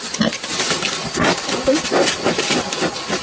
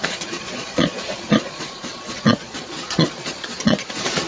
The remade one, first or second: second